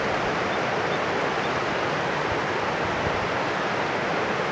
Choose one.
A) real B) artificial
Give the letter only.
A